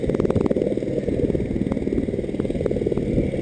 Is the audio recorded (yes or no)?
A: yes